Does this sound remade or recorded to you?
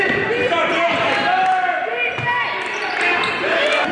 recorded